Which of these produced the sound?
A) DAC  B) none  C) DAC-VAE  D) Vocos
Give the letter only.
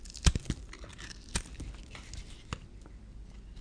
B